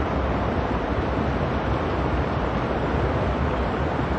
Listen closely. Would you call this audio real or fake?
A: real